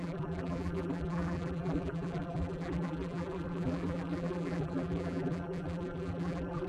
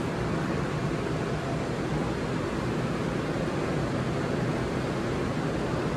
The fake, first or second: first